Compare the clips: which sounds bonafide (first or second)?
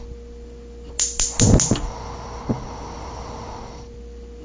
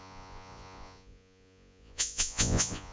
first